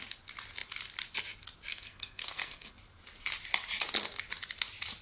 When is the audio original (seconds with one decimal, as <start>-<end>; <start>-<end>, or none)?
0.0-1.7; 2.7-5.0

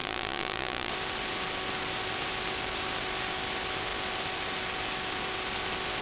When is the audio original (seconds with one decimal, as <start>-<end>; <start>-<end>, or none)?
0.9-6.0

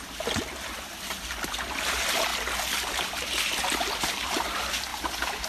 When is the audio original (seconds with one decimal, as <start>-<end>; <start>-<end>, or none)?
0.0-5.5